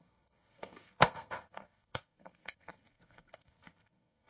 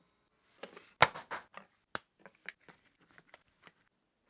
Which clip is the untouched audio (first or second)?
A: second